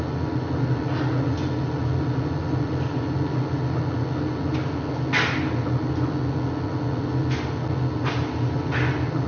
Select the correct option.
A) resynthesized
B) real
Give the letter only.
B